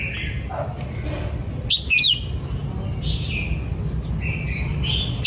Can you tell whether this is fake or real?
real